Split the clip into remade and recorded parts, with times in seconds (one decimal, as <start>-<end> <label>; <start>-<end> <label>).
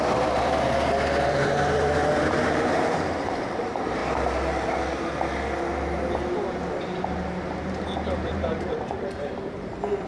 0.0-4.0 remade; 4.0-6.7 recorded; 6.7-10.1 remade